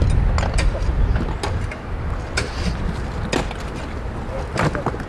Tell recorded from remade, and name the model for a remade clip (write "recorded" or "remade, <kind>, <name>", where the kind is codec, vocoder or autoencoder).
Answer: recorded